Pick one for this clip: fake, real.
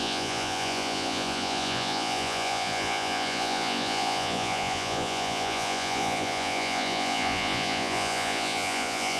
fake